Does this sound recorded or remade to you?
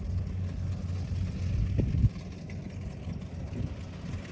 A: recorded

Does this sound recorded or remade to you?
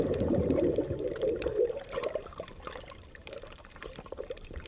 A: remade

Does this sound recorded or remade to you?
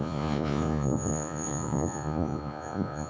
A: remade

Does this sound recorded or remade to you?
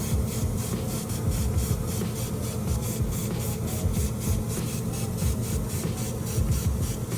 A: recorded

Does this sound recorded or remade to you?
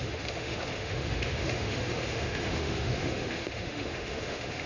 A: remade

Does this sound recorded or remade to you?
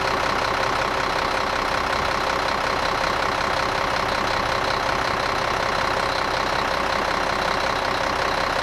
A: recorded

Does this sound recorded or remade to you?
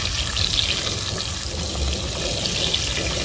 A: recorded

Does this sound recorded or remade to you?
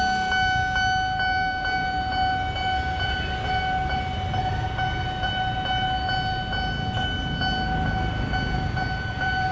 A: recorded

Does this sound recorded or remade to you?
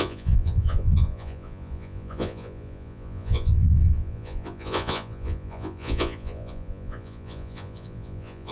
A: remade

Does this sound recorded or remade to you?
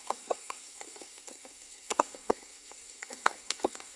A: remade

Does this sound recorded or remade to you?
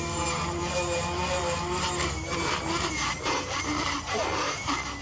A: remade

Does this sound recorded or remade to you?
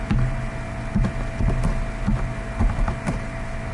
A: recorded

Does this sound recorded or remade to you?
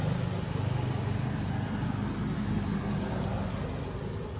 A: recorded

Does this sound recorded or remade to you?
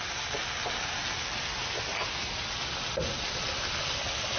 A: recorded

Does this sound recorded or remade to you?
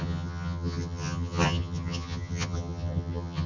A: remade